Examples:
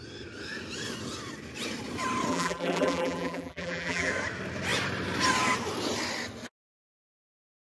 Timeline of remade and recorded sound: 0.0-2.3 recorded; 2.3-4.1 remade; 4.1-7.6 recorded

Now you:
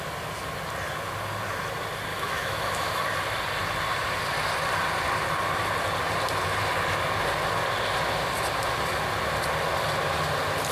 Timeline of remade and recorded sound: 0.0-2.1 recorded; 2.1-3.0 remade; 3.0-10.7 recorded

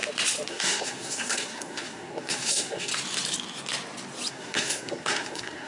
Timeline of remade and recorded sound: 0.0-0.5 recorded; 0.5-2.9 remade; 2.9-4.3 recorded; 4.3-5.7 remade